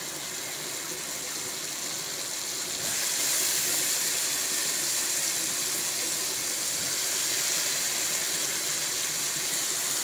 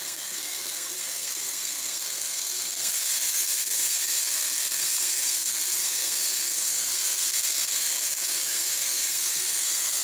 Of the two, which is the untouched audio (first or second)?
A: first